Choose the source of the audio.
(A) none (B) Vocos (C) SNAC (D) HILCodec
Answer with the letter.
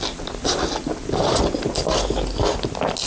A